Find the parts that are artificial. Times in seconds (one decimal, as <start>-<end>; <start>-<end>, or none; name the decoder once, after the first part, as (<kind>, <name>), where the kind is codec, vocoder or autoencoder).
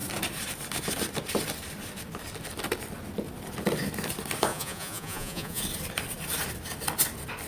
4.5-5.6 (vocoder, Vocos)